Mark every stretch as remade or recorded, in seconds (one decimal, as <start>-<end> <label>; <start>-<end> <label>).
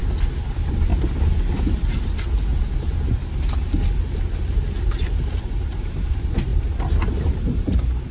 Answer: 0.0-0.5 recorded; 0.5-0.9 remade; 0.9-5.4 recorded; 5.4-6.5 remade; 6.5-7.2 recorded; 7.2-8.1 remade